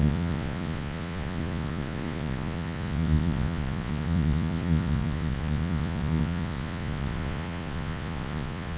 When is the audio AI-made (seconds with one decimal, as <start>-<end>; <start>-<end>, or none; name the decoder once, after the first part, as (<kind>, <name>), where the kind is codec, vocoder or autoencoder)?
0.0-8.8 (vocoder, Vocos)